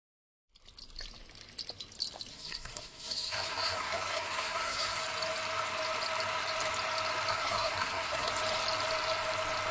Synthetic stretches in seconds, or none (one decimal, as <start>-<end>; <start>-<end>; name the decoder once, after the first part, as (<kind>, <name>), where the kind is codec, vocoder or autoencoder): 2.3-5.0 (codec, SNAC); 7.3-8.3